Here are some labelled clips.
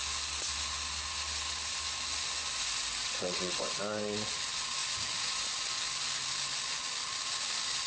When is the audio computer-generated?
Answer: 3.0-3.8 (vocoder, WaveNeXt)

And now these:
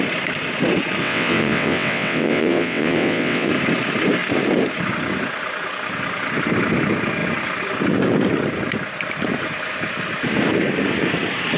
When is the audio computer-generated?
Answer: 1.0-3.5 (vocoder, WaveNeXt)

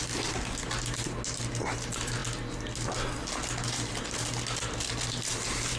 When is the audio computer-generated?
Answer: none